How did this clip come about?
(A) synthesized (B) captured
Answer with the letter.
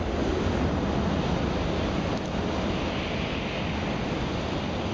B